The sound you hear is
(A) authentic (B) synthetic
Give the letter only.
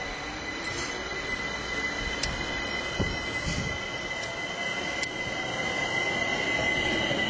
A